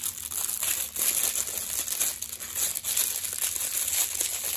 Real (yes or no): yes